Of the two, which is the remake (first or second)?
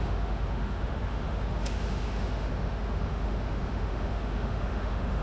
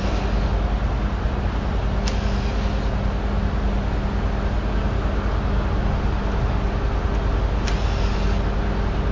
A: first